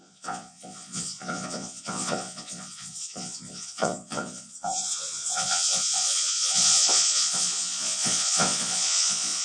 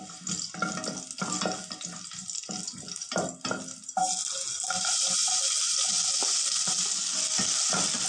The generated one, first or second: first